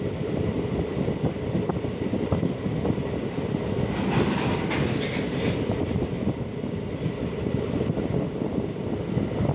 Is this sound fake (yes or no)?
no